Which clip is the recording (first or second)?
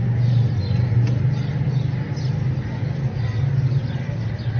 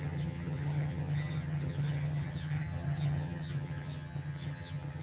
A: first